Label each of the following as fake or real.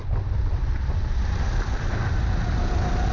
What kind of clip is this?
real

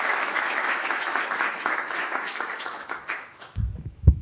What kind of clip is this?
fake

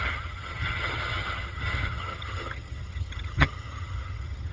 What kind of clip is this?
fake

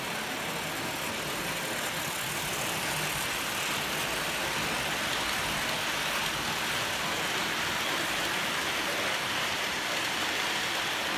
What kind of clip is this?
real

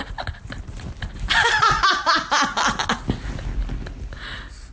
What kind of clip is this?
real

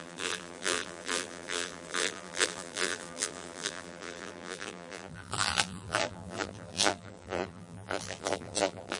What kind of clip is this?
fake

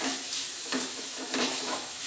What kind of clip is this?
fake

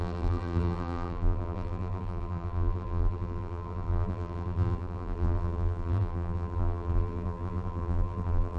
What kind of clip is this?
fake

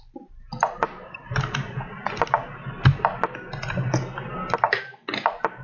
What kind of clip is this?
real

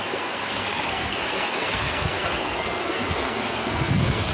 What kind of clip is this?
fake